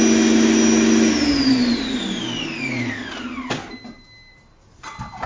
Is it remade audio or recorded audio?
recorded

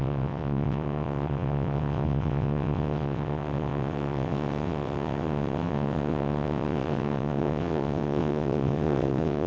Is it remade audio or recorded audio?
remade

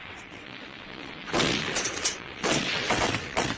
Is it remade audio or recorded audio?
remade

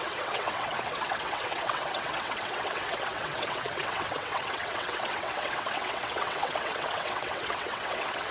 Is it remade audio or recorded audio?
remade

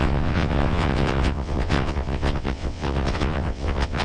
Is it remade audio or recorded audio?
remade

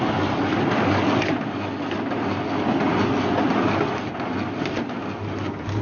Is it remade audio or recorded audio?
recorded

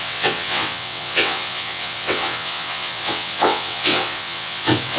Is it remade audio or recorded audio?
remade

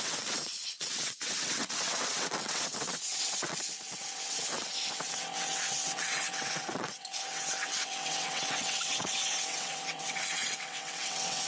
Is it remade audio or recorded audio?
remade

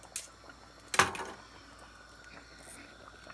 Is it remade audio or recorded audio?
recorded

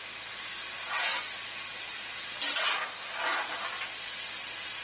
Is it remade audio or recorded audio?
recorded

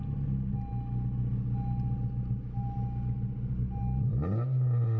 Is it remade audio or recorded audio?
recorded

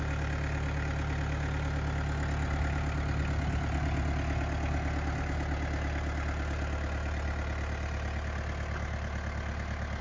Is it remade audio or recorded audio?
recorded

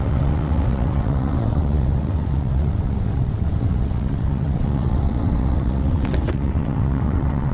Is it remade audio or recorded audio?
remade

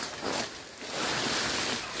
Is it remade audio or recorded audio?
recorded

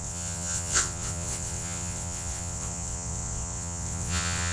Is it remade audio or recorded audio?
remade